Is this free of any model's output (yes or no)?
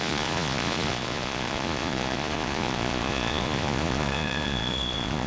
no